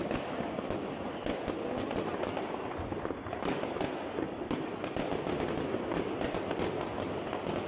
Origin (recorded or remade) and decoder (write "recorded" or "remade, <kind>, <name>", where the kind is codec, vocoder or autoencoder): recorded